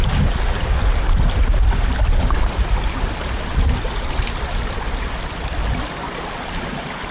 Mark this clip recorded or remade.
recorded